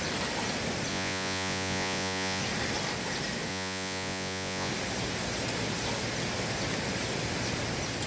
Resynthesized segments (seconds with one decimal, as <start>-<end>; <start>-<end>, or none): 0.9-2.4; 3.5-4.7